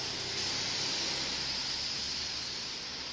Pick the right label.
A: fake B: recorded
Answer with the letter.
B